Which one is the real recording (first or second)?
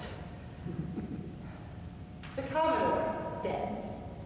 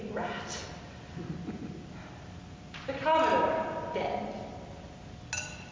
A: second